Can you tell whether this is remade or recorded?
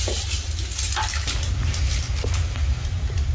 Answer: recorded